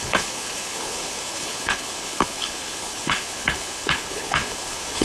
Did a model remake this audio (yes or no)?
yes